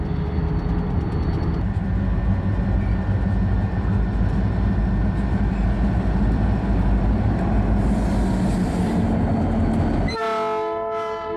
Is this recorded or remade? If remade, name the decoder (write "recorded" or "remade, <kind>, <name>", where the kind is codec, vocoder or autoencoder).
recorded